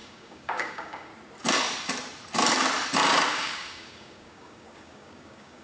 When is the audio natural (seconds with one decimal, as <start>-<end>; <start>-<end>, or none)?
1.1-3.3